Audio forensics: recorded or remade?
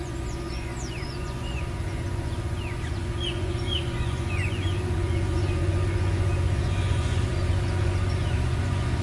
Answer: remade